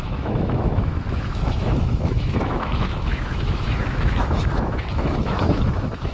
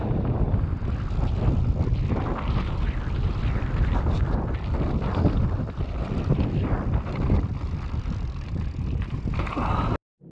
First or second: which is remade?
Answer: first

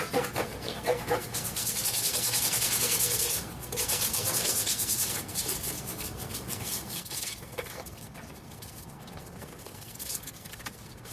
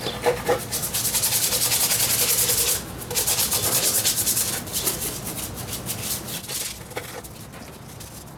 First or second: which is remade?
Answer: first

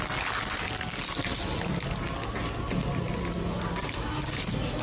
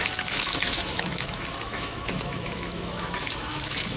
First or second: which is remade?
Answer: second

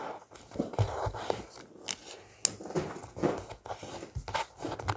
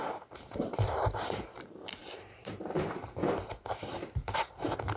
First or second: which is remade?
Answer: second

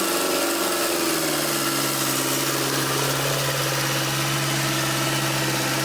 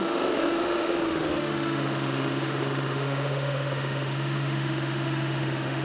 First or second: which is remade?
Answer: second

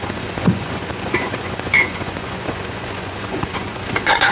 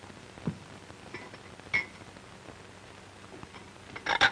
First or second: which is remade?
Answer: first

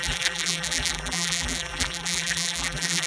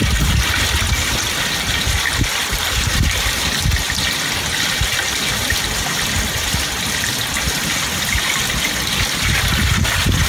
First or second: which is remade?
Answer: first